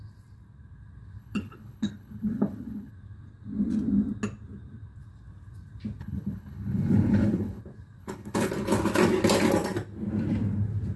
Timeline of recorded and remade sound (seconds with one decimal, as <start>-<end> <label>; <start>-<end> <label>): 0.0-1.2 recorded; 1.2-2.9 remade; 2.9-6.0 recorded; 6.0-7.6 remade; 7.6-8.0 recorded; 8.0-8.5 remade; 8.5-11.0 recorded